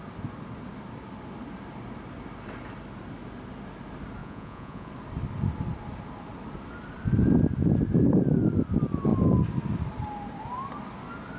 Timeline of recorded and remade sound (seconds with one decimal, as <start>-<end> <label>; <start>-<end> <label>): 0.0-4.2 recorded; 4.2-4.9 remade; 4.9-11.4 recorded